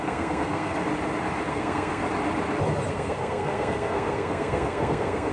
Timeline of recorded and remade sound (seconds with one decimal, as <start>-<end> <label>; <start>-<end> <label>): 0.0-0.9 remade; 0.9-1.5 recorded; 1.5-2.0 remade; 2.0-2.9 recorded; 2.9-5.3 remade